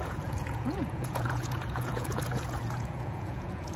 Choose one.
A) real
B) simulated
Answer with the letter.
B